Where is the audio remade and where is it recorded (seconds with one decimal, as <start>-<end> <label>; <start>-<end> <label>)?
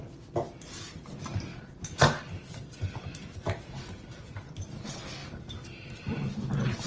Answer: 0.0-1.5 recorded; 1.5-4.5 remade; 4.5-5.2 recorded; 5.2-6.3 remade; 6.3-6.9 recorded